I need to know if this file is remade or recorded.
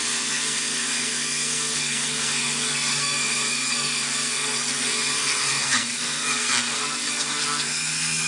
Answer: remade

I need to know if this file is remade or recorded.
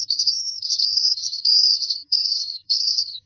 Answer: remade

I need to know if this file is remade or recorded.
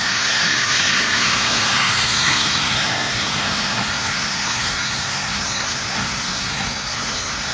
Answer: remade